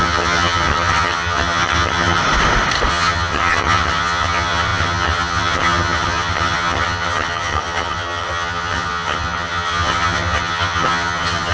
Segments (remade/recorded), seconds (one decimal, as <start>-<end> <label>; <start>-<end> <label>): 0.0-2.2 remade; 2.2-2.9 recorded; 2.9-11.5 remade